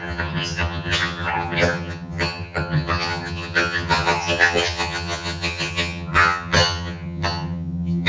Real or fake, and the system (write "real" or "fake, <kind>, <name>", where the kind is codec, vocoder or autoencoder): fake, vocoder, HiFi-GAN